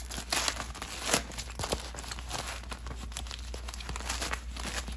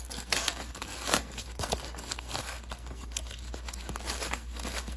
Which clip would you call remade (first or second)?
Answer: second